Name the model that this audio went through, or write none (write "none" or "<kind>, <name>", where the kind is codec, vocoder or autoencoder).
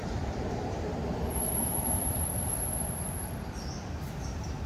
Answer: vocoder, BigVGAN v2